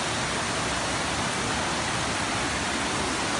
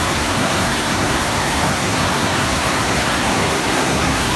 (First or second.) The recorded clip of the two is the first